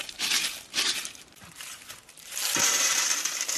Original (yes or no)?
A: no